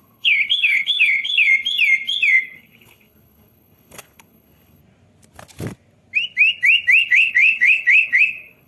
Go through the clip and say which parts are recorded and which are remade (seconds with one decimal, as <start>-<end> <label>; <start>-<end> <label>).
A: 0.0-1.5 remade; 1.5-2.3 recorded; 2.3-4.8 remade; 4.8-7.0 recorded; 7.0-8.7 remade